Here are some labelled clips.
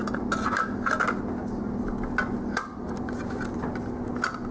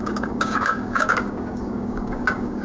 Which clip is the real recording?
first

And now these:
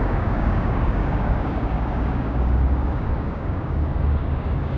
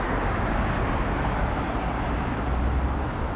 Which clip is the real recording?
second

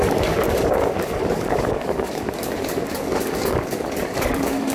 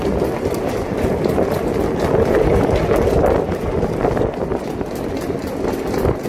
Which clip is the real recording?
second